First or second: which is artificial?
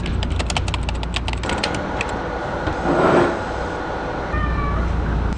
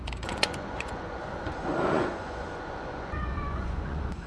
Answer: second